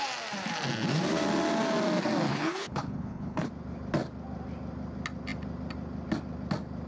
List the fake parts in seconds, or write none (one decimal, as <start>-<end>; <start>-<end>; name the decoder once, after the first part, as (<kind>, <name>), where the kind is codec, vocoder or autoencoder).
2.3-3.5 (codec, HILCodec)